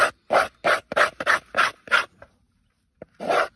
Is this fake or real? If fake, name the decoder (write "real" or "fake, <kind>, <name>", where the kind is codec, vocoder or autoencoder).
real